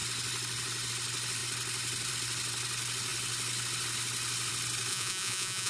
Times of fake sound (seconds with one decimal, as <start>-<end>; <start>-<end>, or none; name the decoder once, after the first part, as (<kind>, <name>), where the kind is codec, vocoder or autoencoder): 4.9-5.7 (vocoder, Vocos)